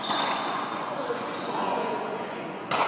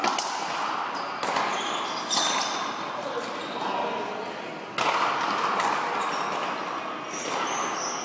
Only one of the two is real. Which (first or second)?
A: second